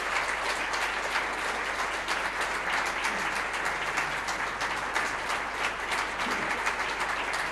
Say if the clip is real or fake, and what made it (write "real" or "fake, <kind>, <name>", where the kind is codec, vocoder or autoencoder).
real